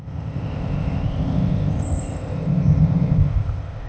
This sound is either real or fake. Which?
fake